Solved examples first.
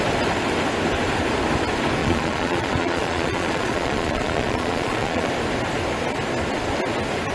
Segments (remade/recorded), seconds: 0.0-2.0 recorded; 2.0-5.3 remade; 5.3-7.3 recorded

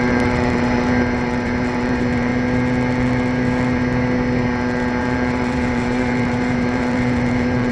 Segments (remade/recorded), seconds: 0.0-2.3 remade; 2.3-5.0 recorded; 5.0-7.7 remade